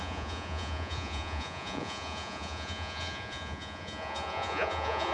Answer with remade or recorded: remade